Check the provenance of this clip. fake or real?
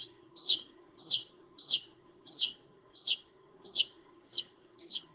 fake